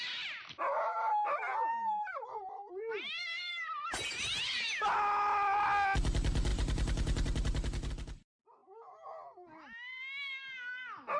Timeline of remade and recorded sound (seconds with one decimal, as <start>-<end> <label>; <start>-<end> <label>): 0.0-1.7 recorded; 1.7-4.4 remade; 4.4-6.5 recorded; 6.5-7.9 remade; 7.9-11.2 recorded